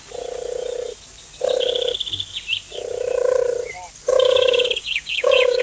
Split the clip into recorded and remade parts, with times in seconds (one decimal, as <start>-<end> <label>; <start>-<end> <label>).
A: 0.0-4.1 recorded; 4.1-5.6 remade